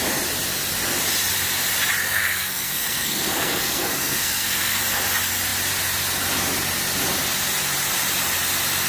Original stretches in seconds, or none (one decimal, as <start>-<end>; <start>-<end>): 0.0-2.0; 4.8-8.9